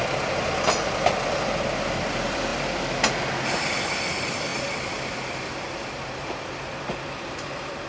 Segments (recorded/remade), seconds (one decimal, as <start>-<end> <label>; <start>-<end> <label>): 0.0-2.5 remade; 2.5-3.6 recorded; 3.6-4.5 remade; 4.5-6.5 recorded; 6.5-7.9 remade